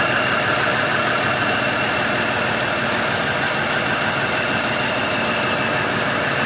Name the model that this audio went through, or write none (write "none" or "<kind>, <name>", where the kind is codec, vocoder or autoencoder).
none